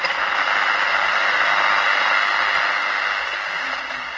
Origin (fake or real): real